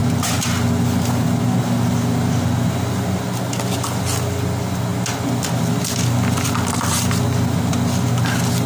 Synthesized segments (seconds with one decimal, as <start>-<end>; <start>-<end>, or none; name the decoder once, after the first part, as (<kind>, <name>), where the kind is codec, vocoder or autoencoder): none